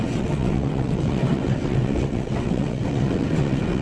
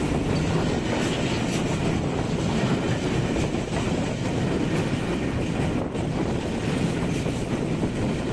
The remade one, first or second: first